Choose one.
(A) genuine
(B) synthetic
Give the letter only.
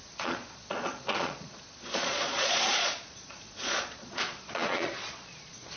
B